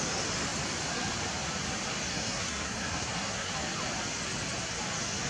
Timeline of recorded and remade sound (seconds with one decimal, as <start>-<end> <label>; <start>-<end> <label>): 0.0-2.1 recorded; 2.1-3.5 remade; 3.5-5.3 recorded